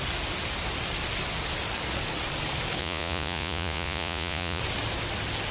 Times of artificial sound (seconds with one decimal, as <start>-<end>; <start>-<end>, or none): 2.8-4.6